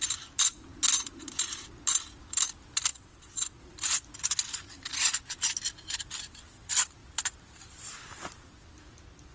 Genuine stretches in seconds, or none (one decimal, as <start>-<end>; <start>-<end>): 0.0-2.9; 3.6-9.3